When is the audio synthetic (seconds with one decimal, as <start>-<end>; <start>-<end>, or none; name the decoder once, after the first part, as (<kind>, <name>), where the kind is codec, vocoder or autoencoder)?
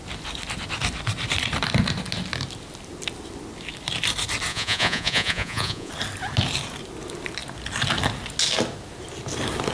4.5-5.9 (vocoder, Vocos)